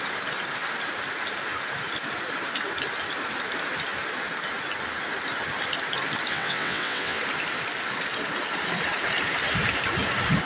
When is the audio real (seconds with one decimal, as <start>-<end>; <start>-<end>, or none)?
0.0-6.3; 7.2-10.5